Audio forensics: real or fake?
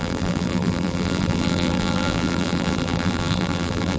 fake